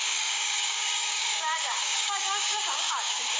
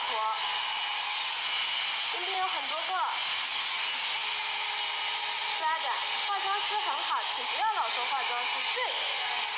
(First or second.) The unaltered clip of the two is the second